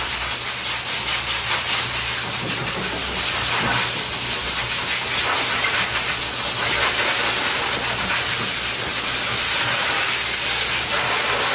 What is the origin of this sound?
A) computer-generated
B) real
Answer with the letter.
B